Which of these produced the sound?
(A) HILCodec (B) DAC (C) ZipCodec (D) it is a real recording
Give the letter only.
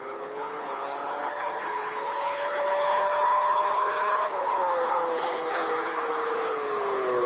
A